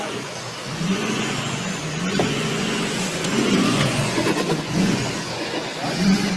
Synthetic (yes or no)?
yes